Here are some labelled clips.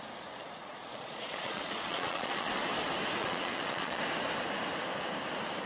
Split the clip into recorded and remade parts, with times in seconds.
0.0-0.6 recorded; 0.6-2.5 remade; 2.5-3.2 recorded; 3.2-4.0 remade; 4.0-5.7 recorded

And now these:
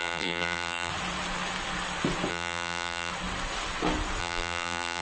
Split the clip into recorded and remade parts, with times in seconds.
0.0-0.9 remade; 0.9-2.3 recorded; 2.3-3.1 remade; 3.1-4.2 recorded; 4.2-5.0 remade

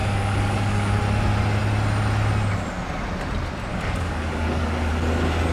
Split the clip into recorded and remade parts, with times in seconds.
0.0-1.0 remade; 1.0-3.7 recorded; 3.7-4.9 remade; 4.9-5.5 recorded

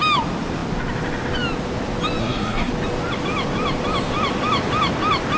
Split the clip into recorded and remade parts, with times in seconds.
0.0-2.2 recorded; 2.2-2.7 remade; 2.7-5.4 recorded

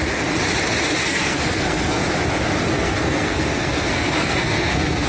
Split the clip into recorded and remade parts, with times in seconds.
0.0-1.0 recorded; 1.0-2.0 remade; 2.0-2.7 recorded; 2.7-5.1 remade

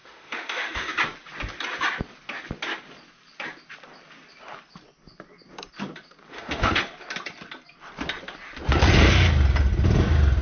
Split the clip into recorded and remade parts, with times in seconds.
0.0-0.9 remade; 0.9-6.3 recorded; 6.3-6.8 remade; 6.8-10.4 recorded

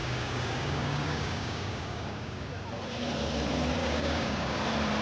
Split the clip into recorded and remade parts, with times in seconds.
0.0-2.5 remade; 2.5-3.8 recorded; 3.8-4.6 remade; 4.6-5.0 recorded

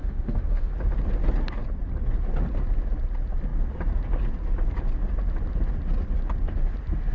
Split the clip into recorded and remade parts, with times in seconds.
0.0-0.7 remade; 0.7-7.1 recorded